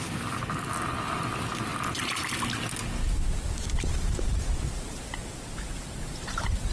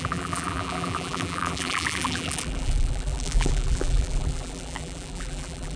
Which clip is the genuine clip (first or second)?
first